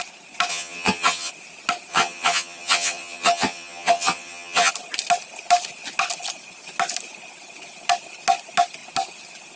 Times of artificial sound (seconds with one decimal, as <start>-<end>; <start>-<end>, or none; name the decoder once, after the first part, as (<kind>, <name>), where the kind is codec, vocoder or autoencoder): 0.5-1.3 (vocoder, HiFi-GAN); 1.9-4.7